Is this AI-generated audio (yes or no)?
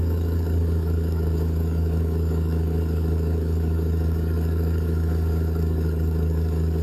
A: yes